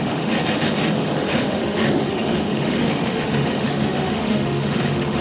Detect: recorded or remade remade